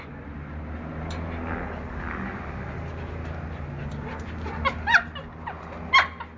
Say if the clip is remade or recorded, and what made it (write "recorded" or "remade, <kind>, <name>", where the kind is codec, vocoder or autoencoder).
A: recorded